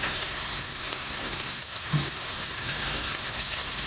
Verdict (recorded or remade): remade